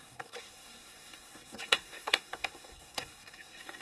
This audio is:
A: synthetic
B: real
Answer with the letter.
A